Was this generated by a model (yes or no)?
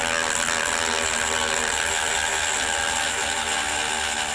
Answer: no